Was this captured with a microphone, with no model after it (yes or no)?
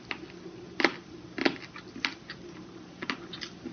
yes